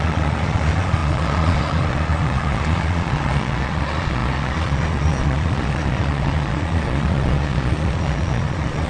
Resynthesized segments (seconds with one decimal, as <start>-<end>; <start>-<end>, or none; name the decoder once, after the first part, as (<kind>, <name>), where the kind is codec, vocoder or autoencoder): 0.0-8.9 (vocoder, Vocos)